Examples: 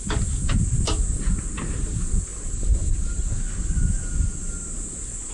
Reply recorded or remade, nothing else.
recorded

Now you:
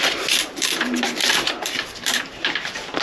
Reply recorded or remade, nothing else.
remade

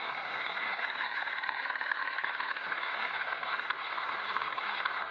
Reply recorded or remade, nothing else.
remade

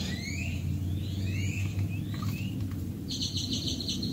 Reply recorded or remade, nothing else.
recorded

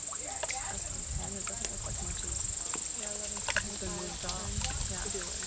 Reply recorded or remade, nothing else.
recorded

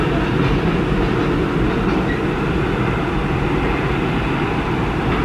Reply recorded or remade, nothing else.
recorded